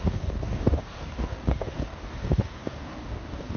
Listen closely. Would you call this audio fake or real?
fake